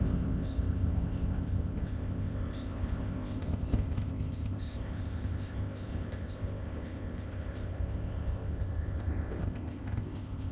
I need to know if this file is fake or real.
fake